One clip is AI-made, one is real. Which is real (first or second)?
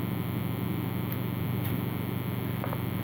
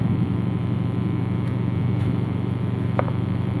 first